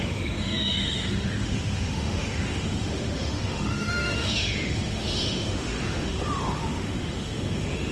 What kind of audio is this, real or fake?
fake